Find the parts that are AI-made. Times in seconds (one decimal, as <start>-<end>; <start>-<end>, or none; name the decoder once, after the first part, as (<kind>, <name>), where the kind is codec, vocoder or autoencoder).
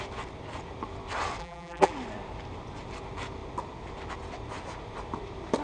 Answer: 1.4-1.9 (vocoder, BigVGAN v2)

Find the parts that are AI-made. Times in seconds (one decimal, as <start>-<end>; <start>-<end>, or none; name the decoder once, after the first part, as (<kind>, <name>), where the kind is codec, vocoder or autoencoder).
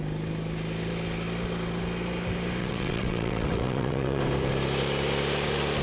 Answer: 2.6-4.2 (vocoder, WaveNeXt)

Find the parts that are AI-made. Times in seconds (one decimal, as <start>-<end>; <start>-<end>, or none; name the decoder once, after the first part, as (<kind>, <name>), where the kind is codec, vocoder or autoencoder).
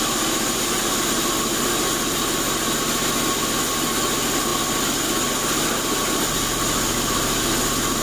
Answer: none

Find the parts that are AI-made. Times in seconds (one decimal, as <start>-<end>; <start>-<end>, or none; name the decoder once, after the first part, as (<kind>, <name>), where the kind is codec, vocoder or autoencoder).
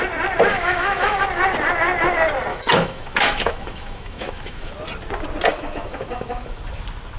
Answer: 0.5-1.2 (autoencoder, DAC-VAE); 2.5-4.7; 5.5-6.6